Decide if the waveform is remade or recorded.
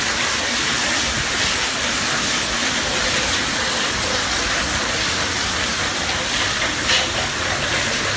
recorded